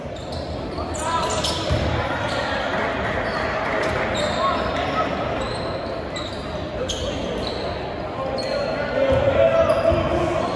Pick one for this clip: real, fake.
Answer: real